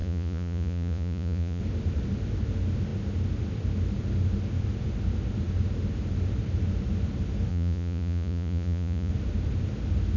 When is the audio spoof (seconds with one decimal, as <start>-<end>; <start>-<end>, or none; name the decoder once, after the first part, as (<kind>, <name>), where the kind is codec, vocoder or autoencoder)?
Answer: 0.0-1.6 (vocoder, Vocos); 7.5-9.1